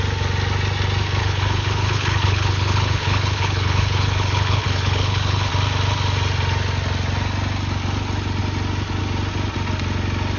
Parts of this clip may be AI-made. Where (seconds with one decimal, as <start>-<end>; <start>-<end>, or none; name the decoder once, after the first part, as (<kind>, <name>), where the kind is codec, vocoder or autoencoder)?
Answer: 1.2-5.5 (codec, HILCodec)